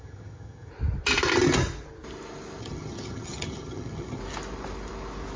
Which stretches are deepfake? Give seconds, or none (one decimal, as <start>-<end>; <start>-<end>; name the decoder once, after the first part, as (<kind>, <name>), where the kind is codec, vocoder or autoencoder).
0.0-0.7 (vocoder, HiFi-GAN); 2.6-4.2